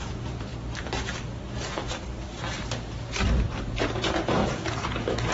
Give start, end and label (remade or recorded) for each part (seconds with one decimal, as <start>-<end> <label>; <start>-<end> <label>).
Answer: 0.0-0.5 remade; 0.5-3.7 recorded; 3.7-5.3 remade

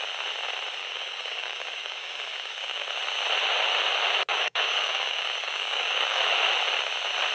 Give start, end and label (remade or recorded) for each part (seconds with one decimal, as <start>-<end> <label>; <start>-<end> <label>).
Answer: 0.0-0.8 recorded; 0.8-2.9 remade; 2.9-4.3 recorded; 4.3-6.2 remade; 6.2-7.3 recorded